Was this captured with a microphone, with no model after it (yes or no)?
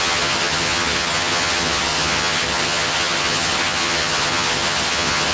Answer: no